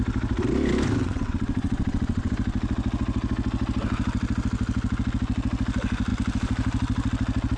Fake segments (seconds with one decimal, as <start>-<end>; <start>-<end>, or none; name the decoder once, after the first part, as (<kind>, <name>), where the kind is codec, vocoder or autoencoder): 1.0-2.3 (vocoder, WaveNeXt)